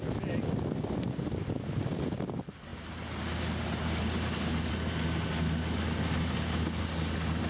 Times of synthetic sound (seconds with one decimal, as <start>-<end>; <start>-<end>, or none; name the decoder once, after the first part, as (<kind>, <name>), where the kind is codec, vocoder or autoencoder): none